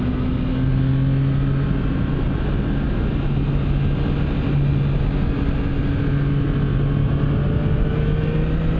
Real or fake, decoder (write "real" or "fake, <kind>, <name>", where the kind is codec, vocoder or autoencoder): real